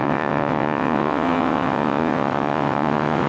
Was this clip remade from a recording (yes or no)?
yes